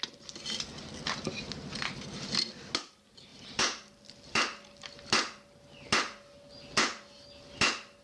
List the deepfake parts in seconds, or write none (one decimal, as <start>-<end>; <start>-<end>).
3.3-5.1